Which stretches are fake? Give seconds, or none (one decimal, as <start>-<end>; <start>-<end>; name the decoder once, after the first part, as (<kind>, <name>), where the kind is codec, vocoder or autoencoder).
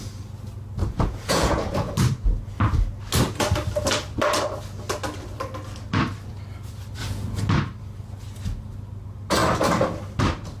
0.8-1.9 (vocoder, Vocos); 7.0-7.5